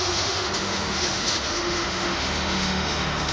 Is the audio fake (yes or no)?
yes